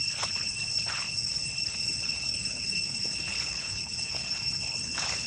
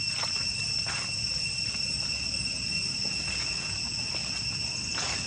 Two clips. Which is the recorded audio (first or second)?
second